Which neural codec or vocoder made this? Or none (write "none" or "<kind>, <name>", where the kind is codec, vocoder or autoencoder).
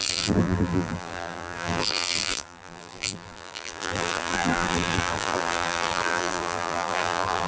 vocoder, BigVGAN v2